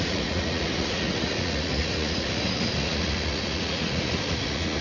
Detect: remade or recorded remade